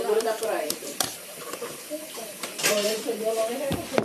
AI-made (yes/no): yes